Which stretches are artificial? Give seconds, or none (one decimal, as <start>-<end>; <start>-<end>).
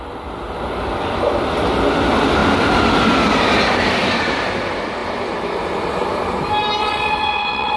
6.8-7.8